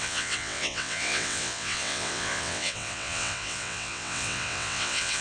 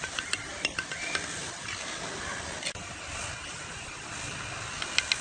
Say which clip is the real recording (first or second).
second